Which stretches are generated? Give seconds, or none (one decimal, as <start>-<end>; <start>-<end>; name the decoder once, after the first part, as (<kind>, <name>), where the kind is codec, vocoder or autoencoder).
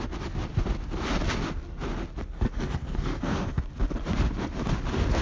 2.2-3.6 (codec, SNAC)